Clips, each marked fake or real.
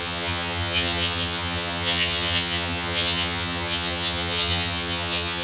fake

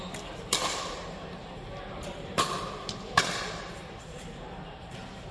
fake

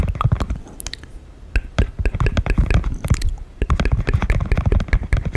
real